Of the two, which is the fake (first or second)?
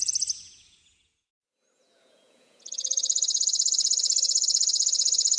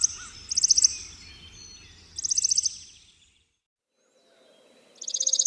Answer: first